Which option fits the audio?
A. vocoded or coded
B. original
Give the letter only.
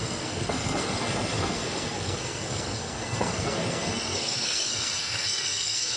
A